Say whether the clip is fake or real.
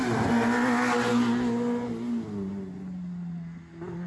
real